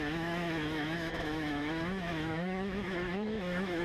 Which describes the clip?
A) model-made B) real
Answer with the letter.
A